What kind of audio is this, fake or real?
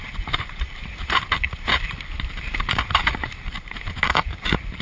fake